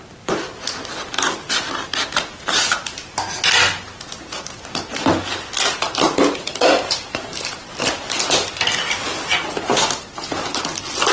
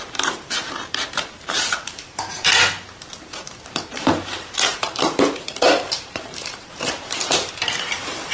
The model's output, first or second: second